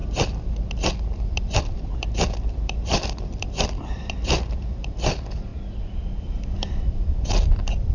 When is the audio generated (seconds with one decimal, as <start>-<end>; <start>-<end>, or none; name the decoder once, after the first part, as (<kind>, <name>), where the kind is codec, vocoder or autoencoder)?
0.0-5.5 (vocoder, BigVGAN v2); 6.2-7.9